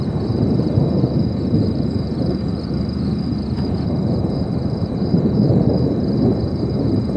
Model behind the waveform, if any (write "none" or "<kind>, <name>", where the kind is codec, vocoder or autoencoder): vocoder, BigVGAN v2